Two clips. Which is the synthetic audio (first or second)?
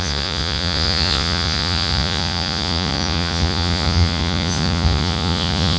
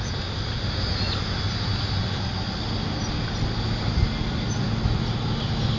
first